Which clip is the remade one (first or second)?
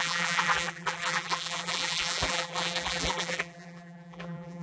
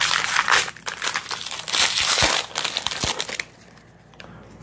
first